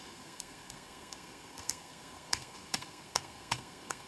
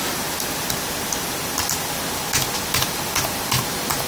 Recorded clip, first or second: second